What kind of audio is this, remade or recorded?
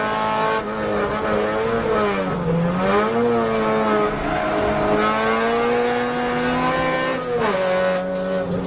recorded